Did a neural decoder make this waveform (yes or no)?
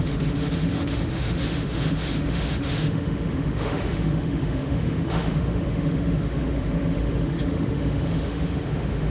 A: yes